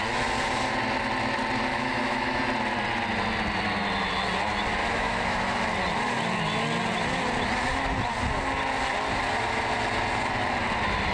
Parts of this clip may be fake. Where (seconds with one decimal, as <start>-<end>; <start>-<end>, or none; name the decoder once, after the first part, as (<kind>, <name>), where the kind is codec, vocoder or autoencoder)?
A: 1.7-2.4 (autoencoder, DAC-VAE); 4.8-5.6